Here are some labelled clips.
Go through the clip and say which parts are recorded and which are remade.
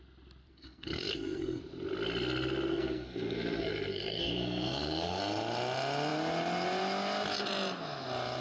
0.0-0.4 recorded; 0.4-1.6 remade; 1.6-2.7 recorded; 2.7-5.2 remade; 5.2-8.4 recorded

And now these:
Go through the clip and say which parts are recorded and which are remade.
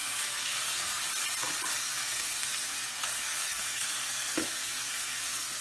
0.0-1.0 remade; 1.0-1.8 recorded; 1.8-5.6 remade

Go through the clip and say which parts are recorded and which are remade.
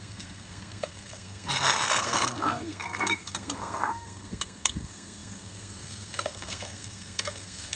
0.0-1.5 remade; 1.5-2.0 recorded; 2.0-7.8 remade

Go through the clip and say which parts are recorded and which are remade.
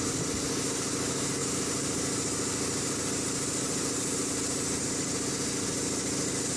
0.0-6.6 recorded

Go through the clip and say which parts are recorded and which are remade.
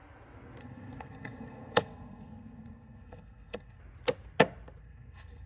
0.0-0.6 recorded; 0.6-3.8 remade; 3.8-4.8 recorded; 4.8-5.5 remade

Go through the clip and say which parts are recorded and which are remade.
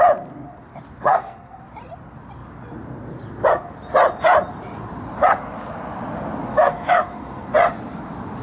0.0-1.0 recorded; 1.0-1.6 remade; 1.6-6.5 recorded; 6.5-7.5 remade; 7.5-8.4 recorded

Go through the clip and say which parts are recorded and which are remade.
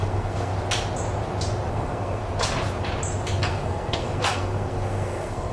0.0-0.5 remade; 0.5-1.7 recorded; 1.7-2.2 remade; 2.2-3.4 recorded; 3.4-5.5 remade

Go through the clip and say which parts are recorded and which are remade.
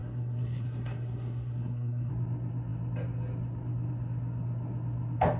0.0-2.1 remade; 2.1-5.4 recorded